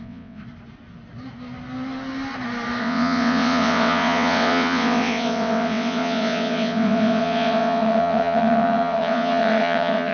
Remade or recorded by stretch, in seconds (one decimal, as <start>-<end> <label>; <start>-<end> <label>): 0.0-0.4 remade; 0.4-2.8 recorded; 2.8-10.1 remade